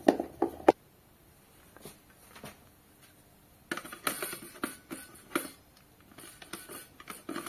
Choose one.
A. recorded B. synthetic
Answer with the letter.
A